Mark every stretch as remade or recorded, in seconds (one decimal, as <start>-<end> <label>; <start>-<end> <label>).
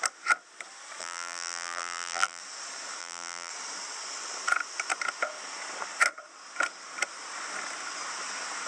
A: 0.0-1.0 recorded; 1.0-2.4 remade; 2.4-3.0 recorded; 3.0-3.5 remade; 3.5-8.7 recorded